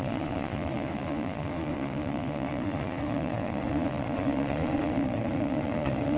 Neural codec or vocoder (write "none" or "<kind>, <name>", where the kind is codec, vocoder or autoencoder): vocoder, Vocos